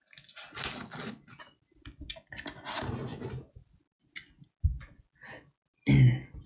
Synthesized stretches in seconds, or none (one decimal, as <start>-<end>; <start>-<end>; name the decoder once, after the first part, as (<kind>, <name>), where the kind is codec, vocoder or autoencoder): none